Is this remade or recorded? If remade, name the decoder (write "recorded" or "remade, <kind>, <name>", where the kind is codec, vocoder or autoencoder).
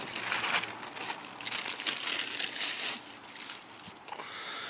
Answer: recorded